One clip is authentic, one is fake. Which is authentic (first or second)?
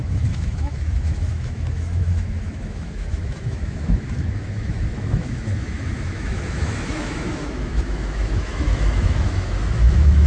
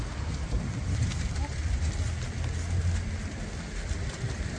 second